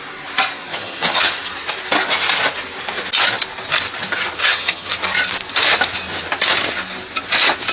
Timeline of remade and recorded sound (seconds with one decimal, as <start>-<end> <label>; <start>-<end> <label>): 0.0-0.7 recorded; 0.7-1.3 remade; 1.3-4.4 recorded; 4.4-4.9 remade; 4.9-7.7 recorded